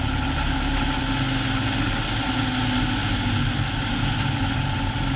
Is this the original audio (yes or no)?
yes